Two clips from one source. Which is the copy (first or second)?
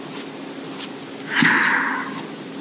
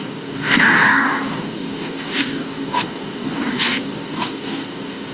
second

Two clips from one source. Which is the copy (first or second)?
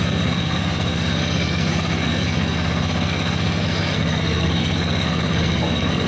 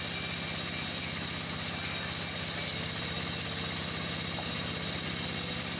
first